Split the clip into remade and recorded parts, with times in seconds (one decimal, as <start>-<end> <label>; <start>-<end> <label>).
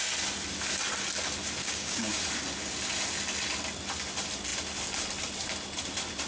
0.0-1.6 recorded; 1.6-2.2 remade; 2.2-6.3 recorded